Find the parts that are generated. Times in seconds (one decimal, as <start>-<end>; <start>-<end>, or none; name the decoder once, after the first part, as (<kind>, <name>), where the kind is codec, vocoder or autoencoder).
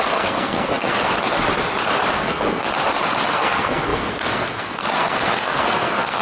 0.0-1.1 (codec, SNAC); 2.2-2.7; 3.3-6.2